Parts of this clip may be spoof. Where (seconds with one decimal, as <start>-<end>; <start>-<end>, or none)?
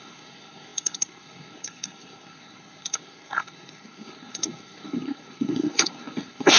0.0-6.6